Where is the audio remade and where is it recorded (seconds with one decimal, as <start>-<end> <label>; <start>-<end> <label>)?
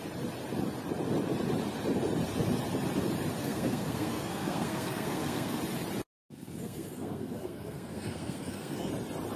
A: 0.0-3.4 recorded; 3.4-5.6 remade; 5.6-6.1 recorded; 6.1-8.9 remade; 8.9-9.4 recorded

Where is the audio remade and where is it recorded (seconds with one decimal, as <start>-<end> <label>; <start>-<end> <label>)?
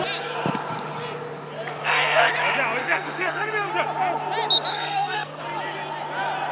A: 0.0-1.8 recorded; 1.8-2.3 remade; 2.3-2.8 recorded; 2.8-3.7 remade; 3.7-4.7 recorded; 4.7-5.4 remade; 5.4-6.5 recorded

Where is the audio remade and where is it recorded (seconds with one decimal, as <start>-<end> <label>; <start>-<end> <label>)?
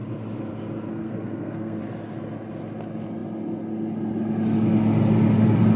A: 0.0-0.9 recorded; 0.9-1.8 remade; 1.8-5.8 recorded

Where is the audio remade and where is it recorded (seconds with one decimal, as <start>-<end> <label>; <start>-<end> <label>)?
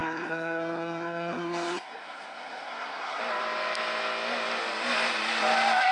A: 0.0-3.2 remade; 3.2-5.9 recorded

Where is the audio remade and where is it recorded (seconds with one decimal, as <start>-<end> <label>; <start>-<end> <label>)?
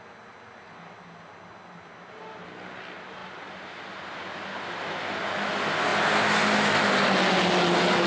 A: 0.0-8.1 recorded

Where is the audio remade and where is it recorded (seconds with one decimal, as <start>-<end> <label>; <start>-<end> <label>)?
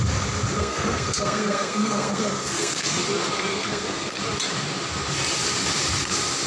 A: 0.0-0.6 recorded; 0.6-3.0 remade; 3.0-3.5 recorded; 3.5-4.2 remade; 4.2-6.5 recorded